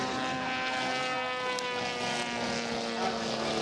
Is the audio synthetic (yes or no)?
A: no